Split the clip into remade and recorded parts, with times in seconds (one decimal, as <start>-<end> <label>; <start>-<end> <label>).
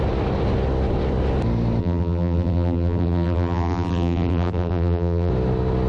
0.0-1.8 recorded; 1.8-5.3 remade; 5.3-5.9 recorded